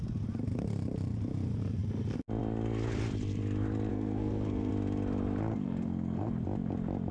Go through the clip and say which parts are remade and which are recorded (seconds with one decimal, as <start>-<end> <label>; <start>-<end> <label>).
0.0-3.9 recorded; 3.9-4.7 remade; 4.7-5.5 recorded; 5.5-6.3 remade; 6.3-7.1 recorded